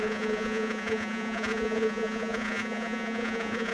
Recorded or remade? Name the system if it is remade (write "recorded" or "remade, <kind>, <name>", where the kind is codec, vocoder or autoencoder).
remade, vocoder, Vocos